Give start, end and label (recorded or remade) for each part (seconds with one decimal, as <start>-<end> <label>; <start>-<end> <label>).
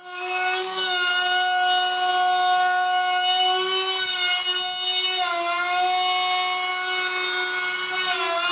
0.0-1.1 remade; 1.1-8.5 recorded